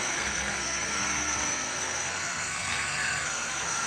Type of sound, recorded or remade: remade